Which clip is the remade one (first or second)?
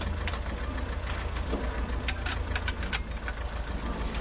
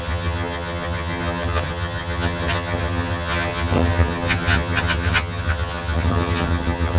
second